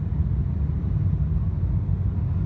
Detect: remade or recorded recorded